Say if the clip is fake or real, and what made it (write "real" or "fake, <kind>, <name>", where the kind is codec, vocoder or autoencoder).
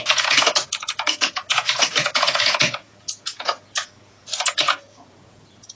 fake, vocoder, Vocos